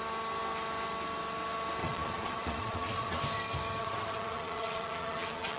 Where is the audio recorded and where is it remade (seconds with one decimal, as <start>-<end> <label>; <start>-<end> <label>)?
0.0-1.8 recorded; 1.8-3.2 remade; 3.2-3.8 recorded; 3.8-5.6 remade